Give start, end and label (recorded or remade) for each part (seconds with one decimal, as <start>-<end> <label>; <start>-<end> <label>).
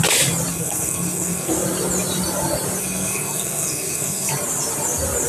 0.0-0.5 recorded; 0.5-1.5 remade; 1.5-2.8 recorded; 2.8-4.3 remade; 4.3-5.3 recorded